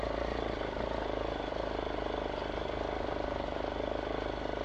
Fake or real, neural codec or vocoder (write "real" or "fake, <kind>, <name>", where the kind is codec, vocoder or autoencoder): real